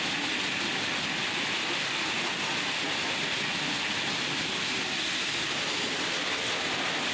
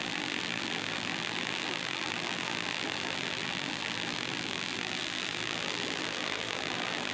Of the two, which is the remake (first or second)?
second